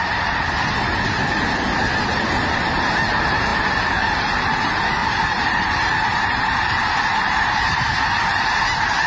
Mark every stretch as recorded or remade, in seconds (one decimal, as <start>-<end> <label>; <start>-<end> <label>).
0.0-5.0 recorded; 5.0-8.0 remade; 8.0-9.1 recorded